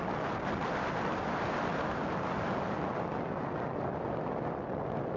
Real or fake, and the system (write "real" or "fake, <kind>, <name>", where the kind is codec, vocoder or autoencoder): real